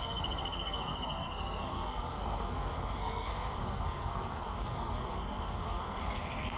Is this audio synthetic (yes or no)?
yes